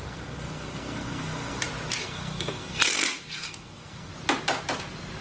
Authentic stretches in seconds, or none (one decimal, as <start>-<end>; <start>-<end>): 1.6-2.0; 4.1-5.2